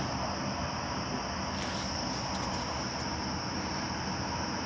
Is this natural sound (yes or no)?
yes